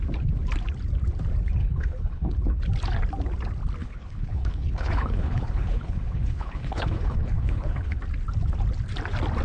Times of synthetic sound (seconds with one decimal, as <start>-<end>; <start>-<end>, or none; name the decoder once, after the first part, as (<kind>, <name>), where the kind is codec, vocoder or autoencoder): 1.6-2.6 (codec, HILCodec); 3.8-8.0